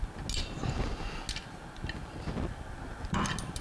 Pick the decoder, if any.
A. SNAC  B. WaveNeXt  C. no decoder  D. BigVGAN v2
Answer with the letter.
C